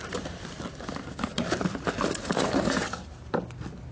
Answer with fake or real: real